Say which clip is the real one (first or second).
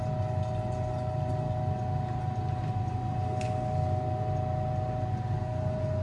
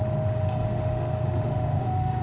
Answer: first